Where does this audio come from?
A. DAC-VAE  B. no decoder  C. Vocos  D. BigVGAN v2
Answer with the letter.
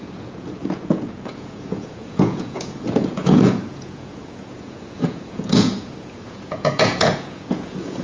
C